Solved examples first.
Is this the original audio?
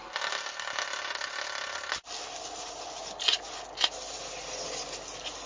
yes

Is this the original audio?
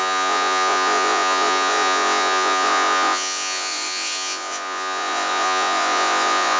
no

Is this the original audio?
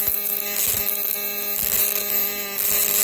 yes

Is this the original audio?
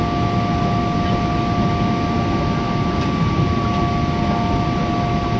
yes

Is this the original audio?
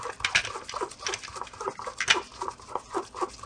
yes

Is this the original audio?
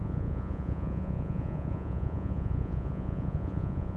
no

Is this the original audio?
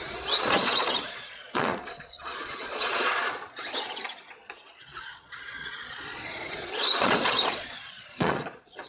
no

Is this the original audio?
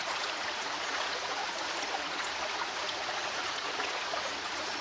no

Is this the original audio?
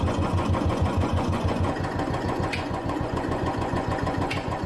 no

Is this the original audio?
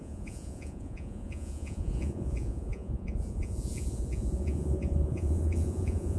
no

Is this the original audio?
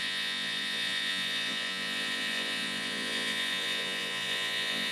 no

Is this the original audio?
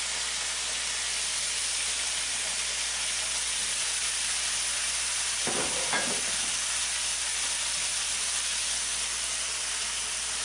yes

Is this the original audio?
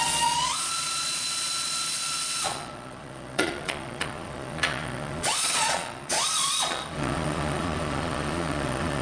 no